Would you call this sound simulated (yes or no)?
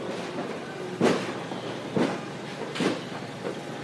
no